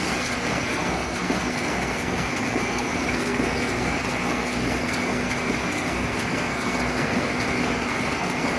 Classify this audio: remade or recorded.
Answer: remade